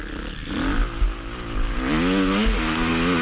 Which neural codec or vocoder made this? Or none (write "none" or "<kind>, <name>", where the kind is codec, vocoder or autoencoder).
none